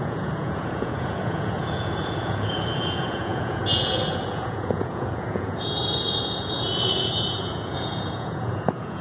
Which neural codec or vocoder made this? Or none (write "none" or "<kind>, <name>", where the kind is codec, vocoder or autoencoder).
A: vocoder, Vocos